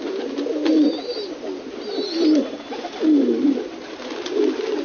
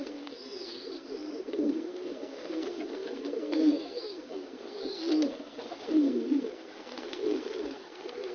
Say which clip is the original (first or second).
first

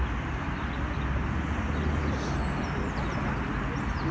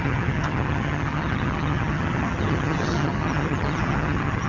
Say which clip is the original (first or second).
first